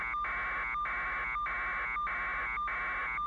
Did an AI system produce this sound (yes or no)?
no